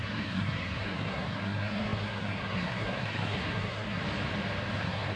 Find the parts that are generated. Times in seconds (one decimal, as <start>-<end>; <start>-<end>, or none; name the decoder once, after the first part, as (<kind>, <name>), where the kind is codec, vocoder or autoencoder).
0.0-4.0 (codec, SNAC); 4.8-5.2